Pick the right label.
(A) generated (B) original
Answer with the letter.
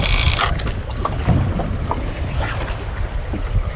B